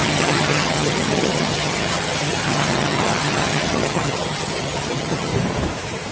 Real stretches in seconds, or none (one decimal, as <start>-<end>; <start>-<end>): 5.3-6.1